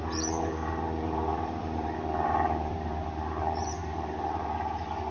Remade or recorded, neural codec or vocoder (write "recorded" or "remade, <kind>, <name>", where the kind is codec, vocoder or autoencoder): remade, vocoder, BigVGAN v2